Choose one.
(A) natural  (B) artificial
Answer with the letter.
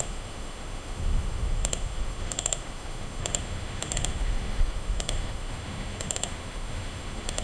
B